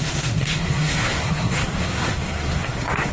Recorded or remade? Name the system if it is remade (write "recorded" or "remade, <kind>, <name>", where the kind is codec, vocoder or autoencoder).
remade, codec, SNAC